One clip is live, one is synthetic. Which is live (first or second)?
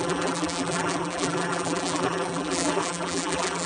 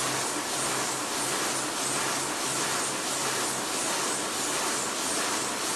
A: second